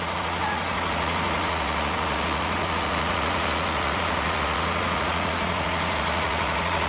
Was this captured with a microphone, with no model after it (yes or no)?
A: no